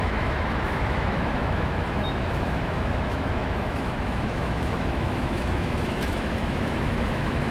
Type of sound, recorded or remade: remade